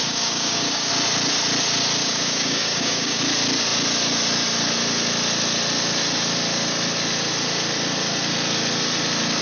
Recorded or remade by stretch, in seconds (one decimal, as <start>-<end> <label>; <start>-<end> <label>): 0.0-0.9 remade; 0.9-2.0 recorded; 2.0-3.2 remade; 3.2-9.4 recorded